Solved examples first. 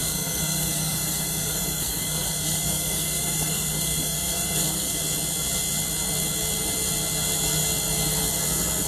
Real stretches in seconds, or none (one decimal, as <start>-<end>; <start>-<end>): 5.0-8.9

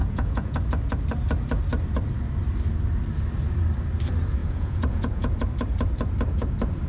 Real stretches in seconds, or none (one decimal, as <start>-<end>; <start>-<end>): 0.6-4.4; 5.4-6.9

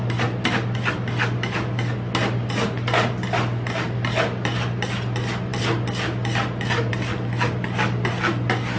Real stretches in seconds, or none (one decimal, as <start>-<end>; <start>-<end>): 0.0-8.8